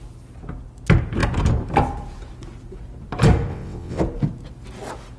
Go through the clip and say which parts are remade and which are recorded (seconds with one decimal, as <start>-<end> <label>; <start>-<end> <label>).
0.0-3.5 recorded; 3.5-4.0 remade; 4.0-5.2 recorded